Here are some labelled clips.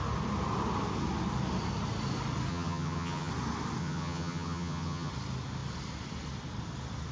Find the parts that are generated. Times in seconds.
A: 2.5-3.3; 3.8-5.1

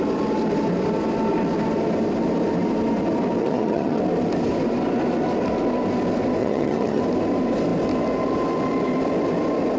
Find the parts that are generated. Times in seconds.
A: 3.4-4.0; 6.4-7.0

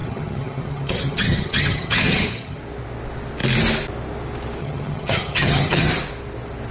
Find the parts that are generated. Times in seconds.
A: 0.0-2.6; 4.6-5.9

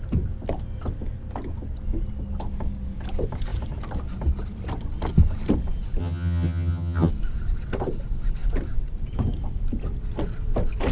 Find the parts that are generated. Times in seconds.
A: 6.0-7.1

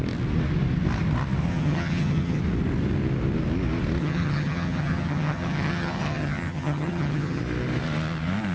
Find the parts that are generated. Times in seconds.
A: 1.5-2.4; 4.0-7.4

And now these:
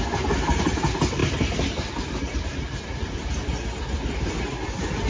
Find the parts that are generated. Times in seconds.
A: none

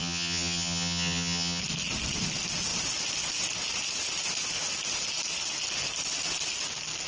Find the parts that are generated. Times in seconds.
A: 0.0-1.6